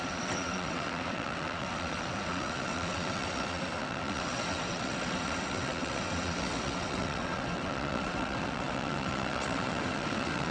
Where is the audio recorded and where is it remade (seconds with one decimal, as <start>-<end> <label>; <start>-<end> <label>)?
0.0-10.5 remade